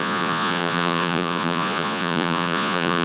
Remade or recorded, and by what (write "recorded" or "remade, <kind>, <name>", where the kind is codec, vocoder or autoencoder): remade, vocoder, Vocos